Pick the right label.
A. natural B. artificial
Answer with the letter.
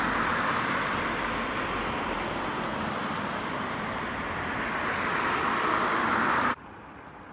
A